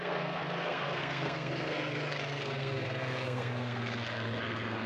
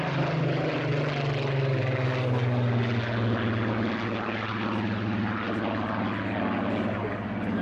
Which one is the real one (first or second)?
second